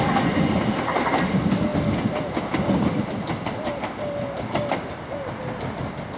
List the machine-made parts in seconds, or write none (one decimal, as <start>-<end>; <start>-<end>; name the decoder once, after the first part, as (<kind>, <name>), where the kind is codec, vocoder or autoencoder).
none